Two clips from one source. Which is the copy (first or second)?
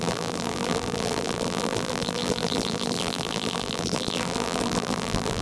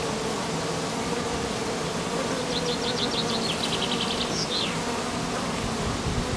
first